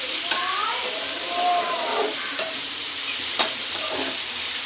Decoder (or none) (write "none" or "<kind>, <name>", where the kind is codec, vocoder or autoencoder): vocoder, BigVGAN v2